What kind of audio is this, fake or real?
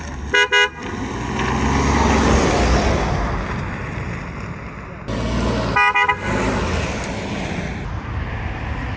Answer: real